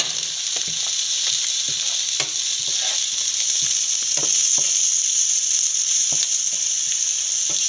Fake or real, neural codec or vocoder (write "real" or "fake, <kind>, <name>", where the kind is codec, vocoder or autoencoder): real